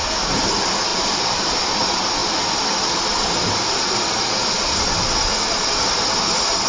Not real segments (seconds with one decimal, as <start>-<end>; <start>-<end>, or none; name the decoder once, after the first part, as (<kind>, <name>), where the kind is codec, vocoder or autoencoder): 0.9-1.6 (vocoder, BigVGAN v2)